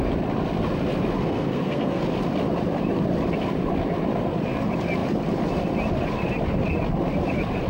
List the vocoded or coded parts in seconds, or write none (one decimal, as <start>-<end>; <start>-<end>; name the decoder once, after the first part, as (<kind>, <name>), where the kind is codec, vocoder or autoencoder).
1.2-2.0 (codec, SNAC)